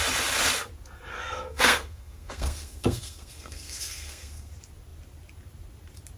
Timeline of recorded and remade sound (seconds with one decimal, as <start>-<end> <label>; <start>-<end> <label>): 0.0-1.1 recorded; 1.1-4.5 remade; 4.5-6.2 recorded

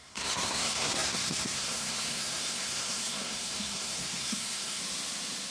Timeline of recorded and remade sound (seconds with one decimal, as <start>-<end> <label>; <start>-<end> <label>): 0.0-4.8 remade; 4.8-5.5 recorded

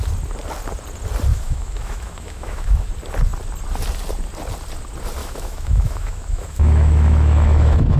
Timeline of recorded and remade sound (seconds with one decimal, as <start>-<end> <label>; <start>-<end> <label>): 0.0-1.3 recorded; 1.3-2.9 remade; 2.9-5.2 recorded; 5.2-8.0 remade

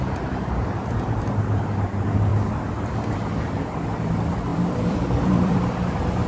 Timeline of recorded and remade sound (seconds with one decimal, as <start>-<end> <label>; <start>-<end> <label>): 0.0-4.5 recorded; 4.5-5.7 remade; 5.7-6.3 recorded

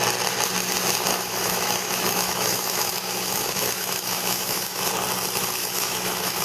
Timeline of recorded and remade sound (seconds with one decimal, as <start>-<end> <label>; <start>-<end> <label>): 0.0-1.1 recorded; 1.1-4.9 remade; 4.9-5.6 recorded; 5.6-6.4 remade

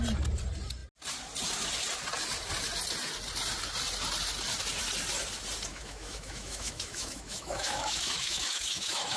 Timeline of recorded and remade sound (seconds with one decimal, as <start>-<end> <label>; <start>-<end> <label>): 0.0-5.7 recorded; 5.7-9.2 remade

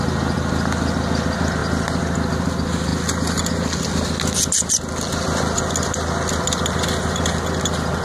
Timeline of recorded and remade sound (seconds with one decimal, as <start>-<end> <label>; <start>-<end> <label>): 0.0-8.0 recorded

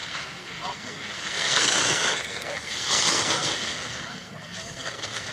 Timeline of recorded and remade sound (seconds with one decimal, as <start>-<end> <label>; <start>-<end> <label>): 0.0-5.3 remade